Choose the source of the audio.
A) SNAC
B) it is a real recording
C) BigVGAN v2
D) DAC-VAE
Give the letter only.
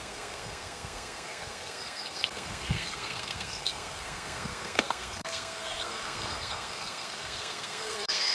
A